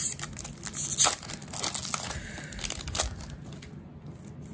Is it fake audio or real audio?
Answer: real